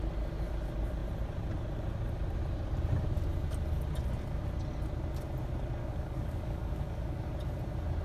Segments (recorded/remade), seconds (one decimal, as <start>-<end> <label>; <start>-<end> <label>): 0.0-5.8 recorded; 5.8-7.3 remade; 7.3-8.0 recorded